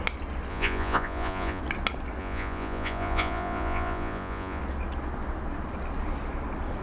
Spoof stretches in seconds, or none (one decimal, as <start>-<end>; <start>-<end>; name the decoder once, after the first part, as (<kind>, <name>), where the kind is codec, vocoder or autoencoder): 0.5-1.6 (vocoder, Vocos); 2.2-4.6